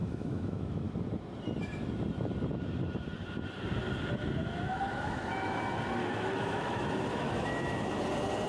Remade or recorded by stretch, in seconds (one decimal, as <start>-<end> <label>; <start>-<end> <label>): 0.0-0.9 remade; 0.9-4.4 recorded; 4.4-5.6 remade; 5.6-6.0 recorded; 6.0-7.9 remade; 7.9-8.5 recorded